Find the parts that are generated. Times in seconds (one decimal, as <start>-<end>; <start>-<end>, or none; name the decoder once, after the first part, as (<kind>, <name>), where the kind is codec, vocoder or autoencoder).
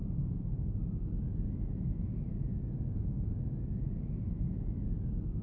none